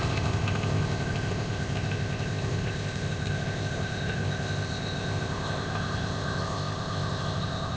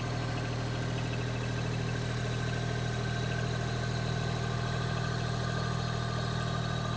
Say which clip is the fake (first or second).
first